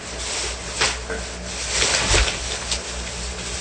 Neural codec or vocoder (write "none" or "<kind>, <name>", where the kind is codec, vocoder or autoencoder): none